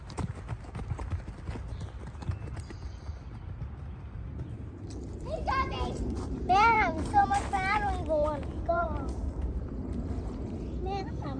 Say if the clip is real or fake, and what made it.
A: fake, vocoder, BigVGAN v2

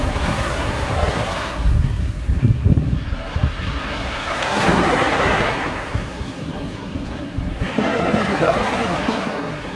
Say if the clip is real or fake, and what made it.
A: fake, codec, SNAC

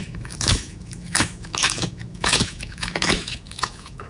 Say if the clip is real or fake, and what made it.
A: fake, autoencoder, DAC-VAE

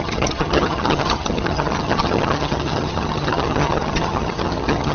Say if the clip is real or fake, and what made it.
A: fake, vocoder, HiFi-GAN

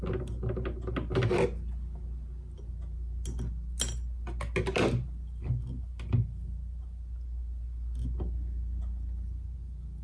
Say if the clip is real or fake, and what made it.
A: real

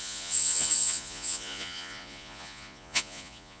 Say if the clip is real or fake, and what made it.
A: fake, vocoder, Vocos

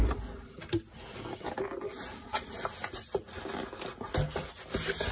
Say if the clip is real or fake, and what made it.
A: real